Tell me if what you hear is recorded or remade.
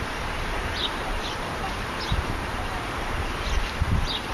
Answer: remade